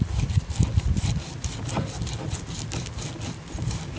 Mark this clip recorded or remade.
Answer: recorded